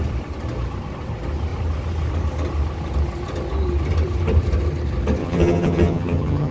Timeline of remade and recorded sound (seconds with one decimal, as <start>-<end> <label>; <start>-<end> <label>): 0.0-5.2 recorded; 5.2-6.5 remade